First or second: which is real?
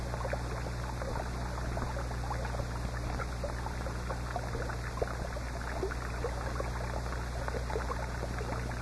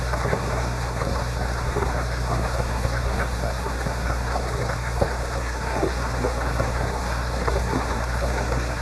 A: first